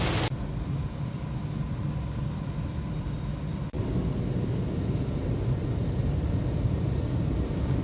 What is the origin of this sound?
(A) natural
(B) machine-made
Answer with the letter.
A